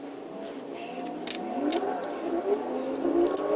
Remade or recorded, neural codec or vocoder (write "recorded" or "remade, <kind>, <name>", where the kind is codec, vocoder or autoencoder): recorded